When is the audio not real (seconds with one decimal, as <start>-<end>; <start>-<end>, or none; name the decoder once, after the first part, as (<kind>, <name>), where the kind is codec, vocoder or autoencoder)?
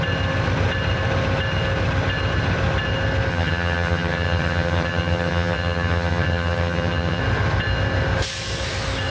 3.3-7.2 (vocoder, HiFi-GAN)